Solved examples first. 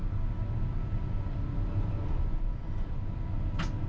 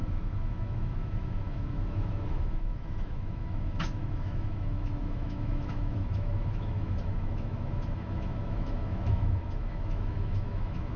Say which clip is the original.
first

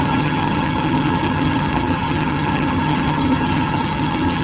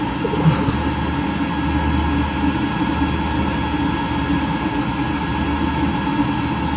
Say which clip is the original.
second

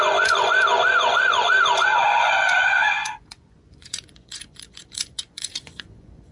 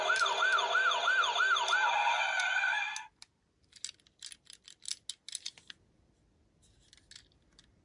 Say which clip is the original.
second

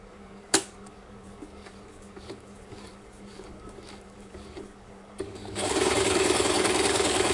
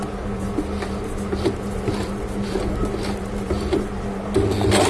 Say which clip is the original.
second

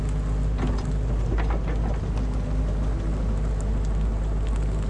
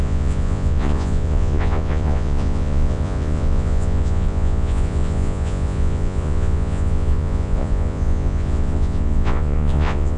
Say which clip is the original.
first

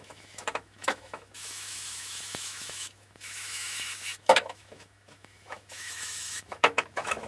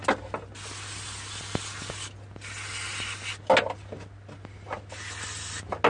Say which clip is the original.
second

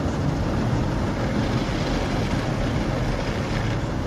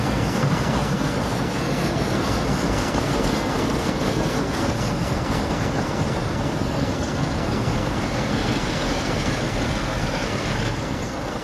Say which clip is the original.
first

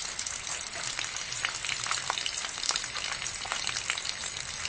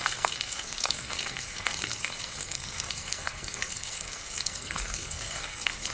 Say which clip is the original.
first